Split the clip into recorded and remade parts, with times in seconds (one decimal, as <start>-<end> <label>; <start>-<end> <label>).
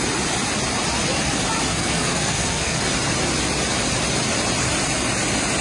0.0-1.7 recorded; 1.7-2.8 remade; 2.8-5.6 recorded